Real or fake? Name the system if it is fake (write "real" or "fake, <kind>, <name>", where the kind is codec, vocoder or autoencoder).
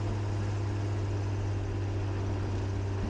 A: real